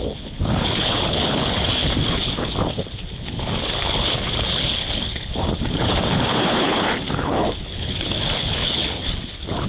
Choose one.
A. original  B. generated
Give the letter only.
B